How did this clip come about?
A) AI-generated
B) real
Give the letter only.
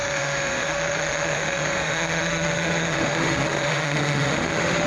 A